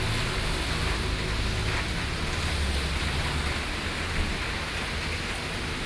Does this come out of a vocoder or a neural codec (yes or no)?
no